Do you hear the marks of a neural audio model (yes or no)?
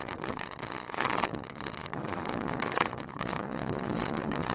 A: yes